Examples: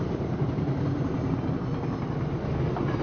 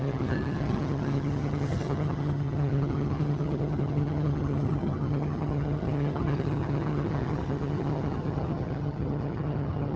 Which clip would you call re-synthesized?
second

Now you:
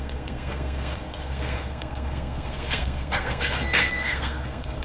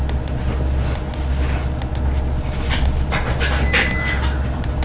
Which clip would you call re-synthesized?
first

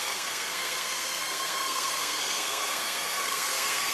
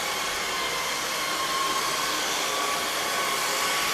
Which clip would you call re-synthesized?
first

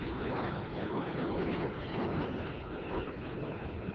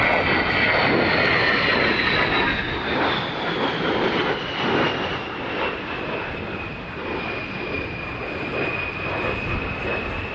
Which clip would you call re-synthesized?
first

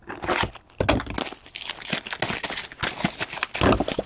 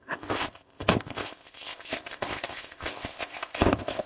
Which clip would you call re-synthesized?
second